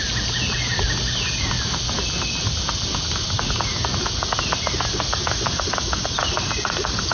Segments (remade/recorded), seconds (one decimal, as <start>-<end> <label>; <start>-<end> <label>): 0.0-7.1 recorded